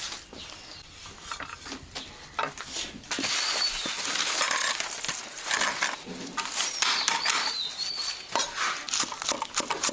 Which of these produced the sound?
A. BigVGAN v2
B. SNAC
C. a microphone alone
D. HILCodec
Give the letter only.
C